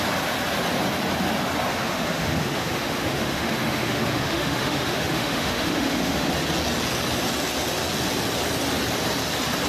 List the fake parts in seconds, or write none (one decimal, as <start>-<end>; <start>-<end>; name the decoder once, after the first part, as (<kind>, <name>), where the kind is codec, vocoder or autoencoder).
1.7-6.3 (autoencoder, DAC-VAE)